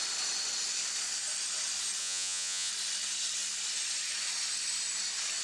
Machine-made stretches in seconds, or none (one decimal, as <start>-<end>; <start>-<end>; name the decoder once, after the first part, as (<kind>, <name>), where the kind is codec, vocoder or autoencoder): 2.0-2.7 (vocoder, Vocos)